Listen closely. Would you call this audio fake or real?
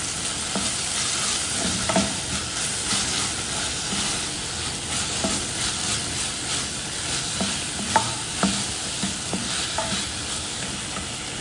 real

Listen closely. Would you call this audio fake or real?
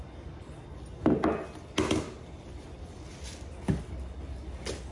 real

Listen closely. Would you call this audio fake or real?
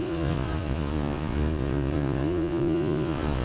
fake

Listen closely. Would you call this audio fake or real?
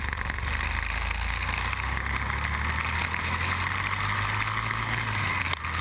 real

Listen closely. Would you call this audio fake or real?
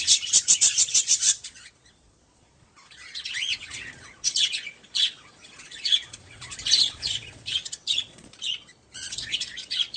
fake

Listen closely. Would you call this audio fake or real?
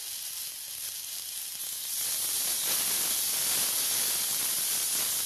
real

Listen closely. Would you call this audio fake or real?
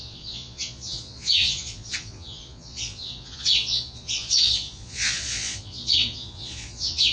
fake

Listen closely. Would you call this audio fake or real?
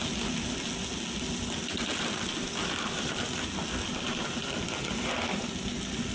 real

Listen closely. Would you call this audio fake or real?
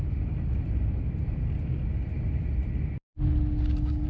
real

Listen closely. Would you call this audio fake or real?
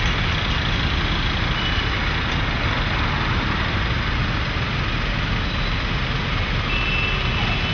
real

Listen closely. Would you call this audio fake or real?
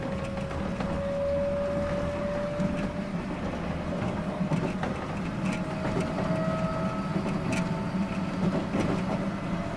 real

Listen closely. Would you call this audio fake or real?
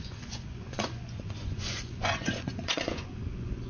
fake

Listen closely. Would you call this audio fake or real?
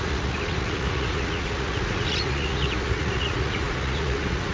fake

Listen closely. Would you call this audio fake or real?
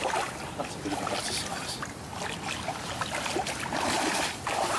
real